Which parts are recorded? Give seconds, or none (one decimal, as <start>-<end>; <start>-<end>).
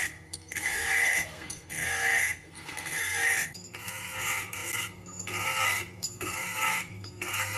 none